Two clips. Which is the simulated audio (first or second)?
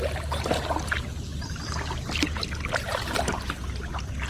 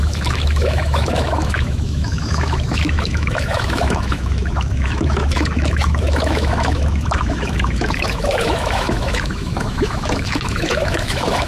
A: second